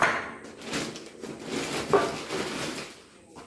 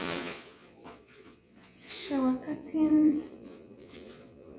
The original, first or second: first